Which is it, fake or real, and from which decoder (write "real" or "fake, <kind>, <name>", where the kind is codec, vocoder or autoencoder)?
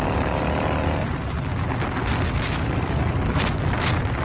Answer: real